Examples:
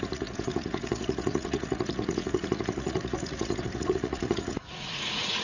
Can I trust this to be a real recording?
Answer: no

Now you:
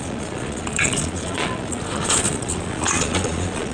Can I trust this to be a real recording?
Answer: no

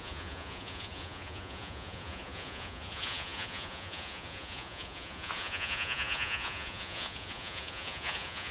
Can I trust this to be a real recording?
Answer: no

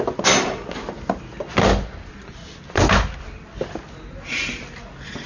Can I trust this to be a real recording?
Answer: yes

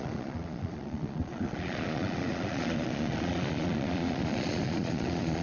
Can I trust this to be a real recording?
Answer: no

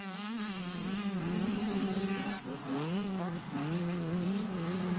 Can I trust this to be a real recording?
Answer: no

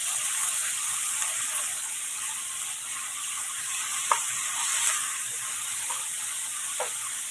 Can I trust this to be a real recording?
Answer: yes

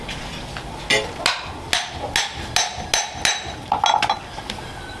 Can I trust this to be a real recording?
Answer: yes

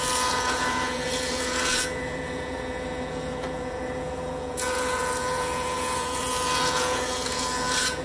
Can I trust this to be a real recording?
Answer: no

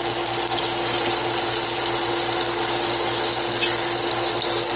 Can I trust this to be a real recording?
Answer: yes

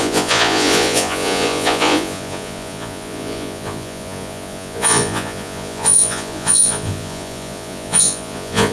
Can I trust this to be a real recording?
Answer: no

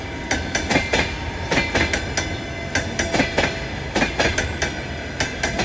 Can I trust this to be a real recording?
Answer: yes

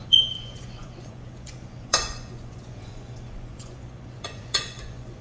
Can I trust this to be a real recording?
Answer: no